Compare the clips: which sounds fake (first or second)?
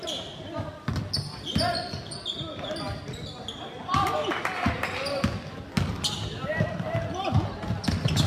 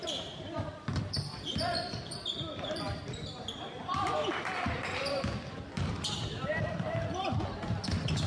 second